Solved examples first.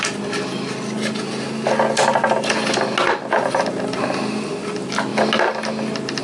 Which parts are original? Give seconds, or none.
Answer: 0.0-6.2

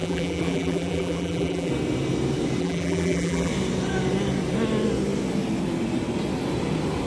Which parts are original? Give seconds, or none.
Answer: 1.7-2.6; 3.5-7.1

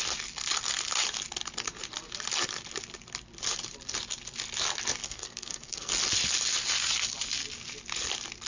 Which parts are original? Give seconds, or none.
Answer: 0.0-5.0; 5.9-8.5

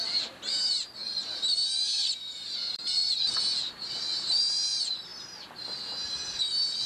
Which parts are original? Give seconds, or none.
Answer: 0.5-2.6; 4.4-6.9

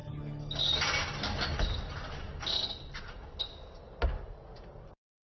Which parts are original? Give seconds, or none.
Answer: 0.0-5.3

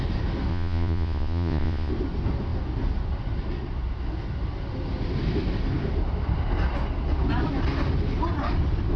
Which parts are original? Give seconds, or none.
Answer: 0.0-0.5; 1.9-9.0

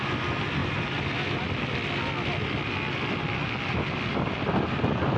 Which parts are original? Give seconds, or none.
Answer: 0.0-5.2

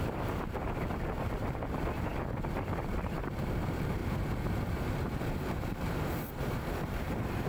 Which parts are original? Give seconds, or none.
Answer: 2.1-2.9; 4.0-5.2